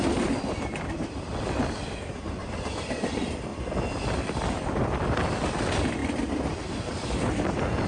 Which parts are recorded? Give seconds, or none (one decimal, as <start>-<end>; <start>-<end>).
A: 3.5-4.1